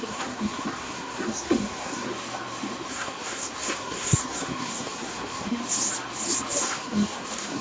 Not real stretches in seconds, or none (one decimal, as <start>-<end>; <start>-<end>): 0.0-2.1; 2.9-5.6; 6.6-7.6